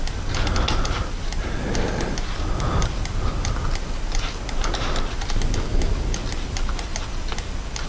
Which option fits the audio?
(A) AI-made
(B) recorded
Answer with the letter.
B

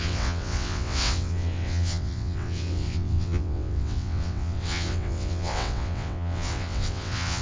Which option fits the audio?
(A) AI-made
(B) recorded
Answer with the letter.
A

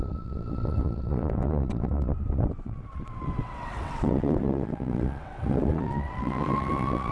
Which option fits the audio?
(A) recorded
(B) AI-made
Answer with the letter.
B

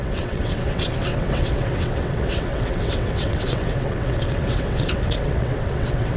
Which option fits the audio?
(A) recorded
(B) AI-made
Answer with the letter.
B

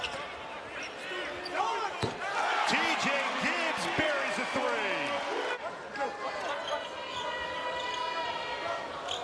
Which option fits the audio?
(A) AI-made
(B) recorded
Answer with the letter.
B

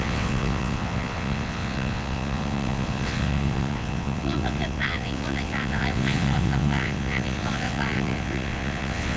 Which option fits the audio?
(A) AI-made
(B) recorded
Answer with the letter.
A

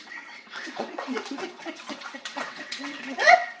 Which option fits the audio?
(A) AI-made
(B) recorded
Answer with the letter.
A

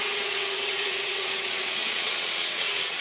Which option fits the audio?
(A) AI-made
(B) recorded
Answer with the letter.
A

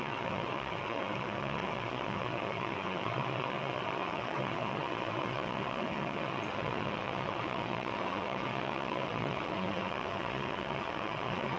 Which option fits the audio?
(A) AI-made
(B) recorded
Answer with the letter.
A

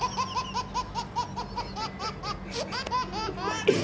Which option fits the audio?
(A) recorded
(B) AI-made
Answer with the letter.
A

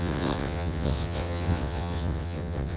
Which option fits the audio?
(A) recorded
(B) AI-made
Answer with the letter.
B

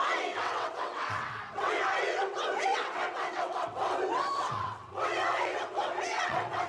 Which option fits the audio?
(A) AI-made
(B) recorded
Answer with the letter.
A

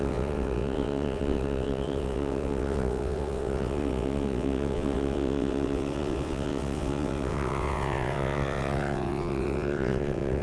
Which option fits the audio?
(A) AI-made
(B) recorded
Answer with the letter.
A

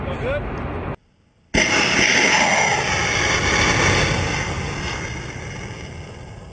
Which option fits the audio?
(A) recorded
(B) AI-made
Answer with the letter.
A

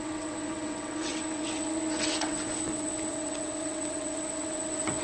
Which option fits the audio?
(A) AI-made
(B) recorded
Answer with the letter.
A